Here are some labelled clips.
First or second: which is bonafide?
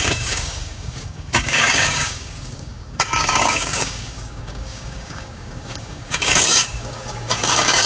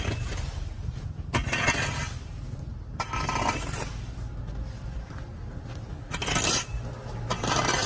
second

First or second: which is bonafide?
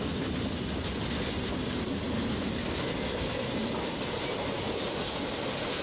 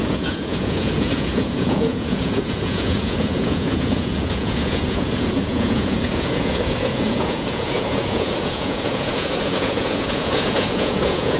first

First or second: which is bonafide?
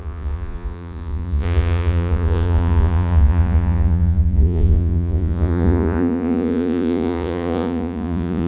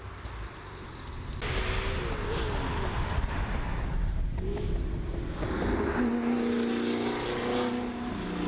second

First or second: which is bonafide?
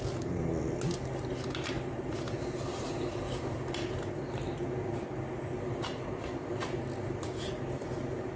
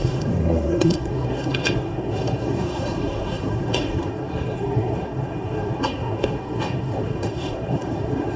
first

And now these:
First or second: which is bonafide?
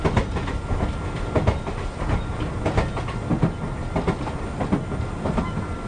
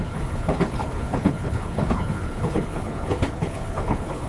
first